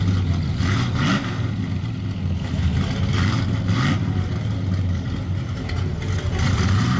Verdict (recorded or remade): recorded